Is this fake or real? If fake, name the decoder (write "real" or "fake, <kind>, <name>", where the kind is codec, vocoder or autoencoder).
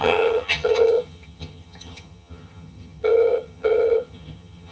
fake, vocoder, HiFi-GAN